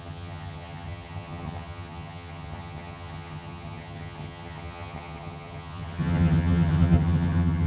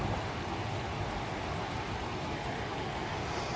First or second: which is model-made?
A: first